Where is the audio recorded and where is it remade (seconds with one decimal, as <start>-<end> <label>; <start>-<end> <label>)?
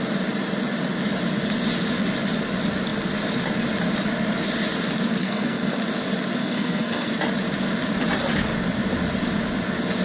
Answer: 0.0-5.2 recorded; 5.2-5.7 remade; 5.7-6.4 recorded; 6.4-7.1 remade; 7.1-10.0 recorded